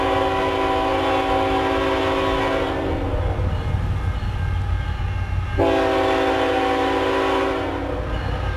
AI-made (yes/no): no